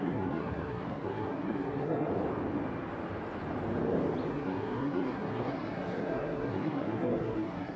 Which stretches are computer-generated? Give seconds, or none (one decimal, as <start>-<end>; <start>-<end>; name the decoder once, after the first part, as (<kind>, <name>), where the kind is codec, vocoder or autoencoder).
0.0-2.1 (codec, SNAC); 4.3-7.8